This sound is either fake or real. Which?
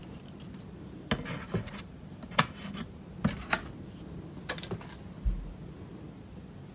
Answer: real